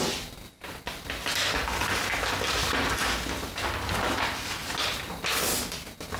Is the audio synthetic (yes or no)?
no